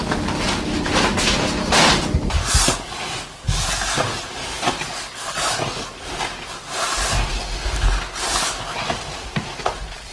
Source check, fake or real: real